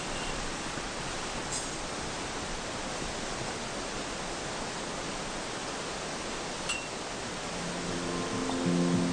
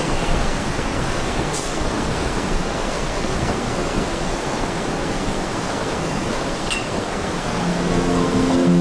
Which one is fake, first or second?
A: second